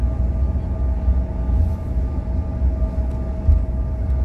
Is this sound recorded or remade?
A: recorded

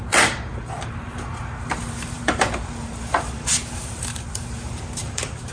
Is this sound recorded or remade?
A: remade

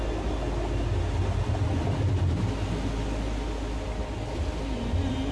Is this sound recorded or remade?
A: recorded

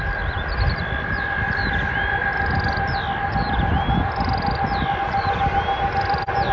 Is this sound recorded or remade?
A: remade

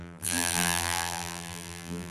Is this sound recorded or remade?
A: remade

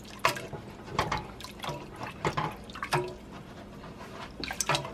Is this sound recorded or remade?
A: recorded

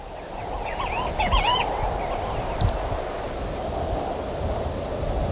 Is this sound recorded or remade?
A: recorded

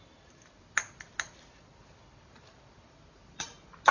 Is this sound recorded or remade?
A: recorded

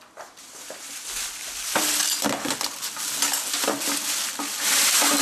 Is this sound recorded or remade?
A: recorded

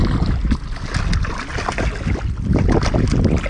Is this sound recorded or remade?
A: recorded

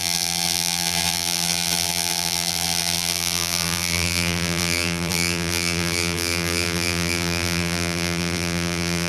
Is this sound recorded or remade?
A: remade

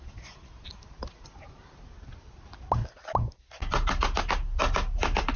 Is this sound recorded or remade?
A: recorded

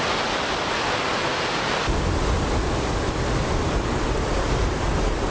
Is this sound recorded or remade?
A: recorded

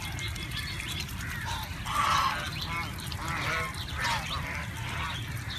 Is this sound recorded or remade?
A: recorded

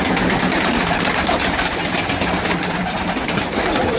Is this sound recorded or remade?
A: recorded